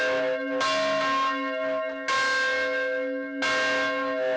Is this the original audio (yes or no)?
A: yes